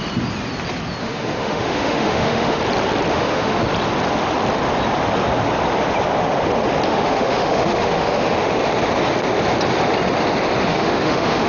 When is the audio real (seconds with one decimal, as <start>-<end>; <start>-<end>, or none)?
0.0-1.0; 2.6-3.1; 3.6-6.9; 8.5-10.7